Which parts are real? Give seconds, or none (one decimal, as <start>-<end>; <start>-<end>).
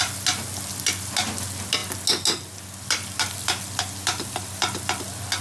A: 0.0-5.4